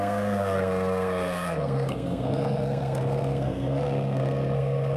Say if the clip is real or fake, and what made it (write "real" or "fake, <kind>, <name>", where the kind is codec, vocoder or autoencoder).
fake, codec, SNAC